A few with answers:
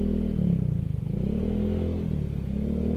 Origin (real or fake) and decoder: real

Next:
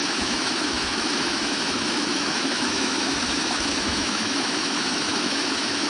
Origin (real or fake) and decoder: fake, autoencoder, DAC-VAE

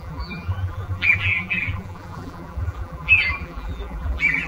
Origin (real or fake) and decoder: fake, vocoder, BigVGAN v2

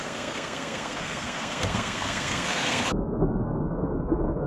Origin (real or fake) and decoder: fake, codec, SNAC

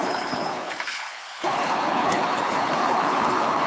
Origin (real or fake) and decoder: fake, codec, HILCodec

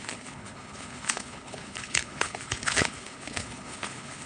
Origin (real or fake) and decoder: fake, codec, HILCodec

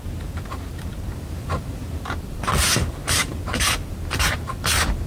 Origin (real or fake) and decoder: fake, vocoder, BigVGAN v2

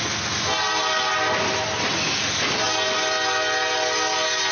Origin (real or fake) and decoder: real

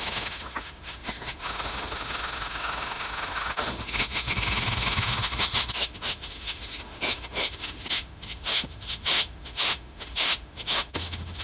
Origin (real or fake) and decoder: fake, autoencoder, DAC-VAE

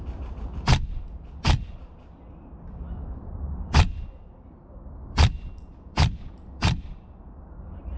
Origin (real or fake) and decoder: fake, vocoder, BigVGAN v2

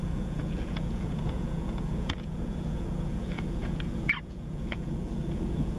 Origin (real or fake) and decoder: fake, vocoder, Vocos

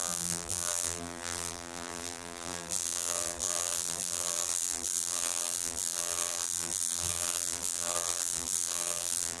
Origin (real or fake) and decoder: fake, vocoder, BigVGAN v2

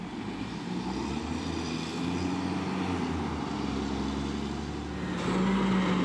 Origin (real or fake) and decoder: real